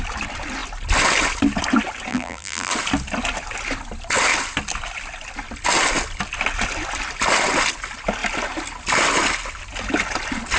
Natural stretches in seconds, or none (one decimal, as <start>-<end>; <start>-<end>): 0.0-2.1; 2.7-10.6